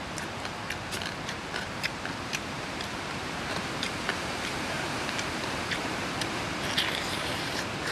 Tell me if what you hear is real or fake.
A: fake